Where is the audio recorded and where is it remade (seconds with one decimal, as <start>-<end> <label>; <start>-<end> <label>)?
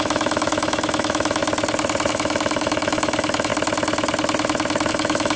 0.0-1.4 remade; 1.4-2.1 recorded; 2.1-3.5 remade; 3.5-4.9 recorded; 4.9-5.4 remade